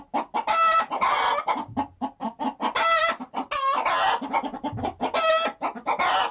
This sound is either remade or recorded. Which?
recorded